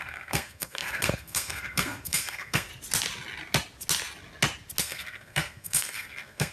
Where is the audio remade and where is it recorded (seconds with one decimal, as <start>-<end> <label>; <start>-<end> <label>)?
0.0-2.7 remade; 2.7-4.8 recorded; 4.8-6.5 remade